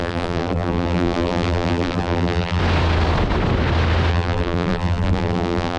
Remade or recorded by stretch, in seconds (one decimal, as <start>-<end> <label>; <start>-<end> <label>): 0.0-2.6 remade; 2.6-4.1 recorded; 4.1-5.8 remade